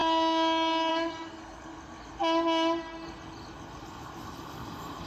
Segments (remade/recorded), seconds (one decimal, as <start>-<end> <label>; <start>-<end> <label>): 0.0-0.9 recorded; 0.9-1.7 remade; 1.7-5.1 recorded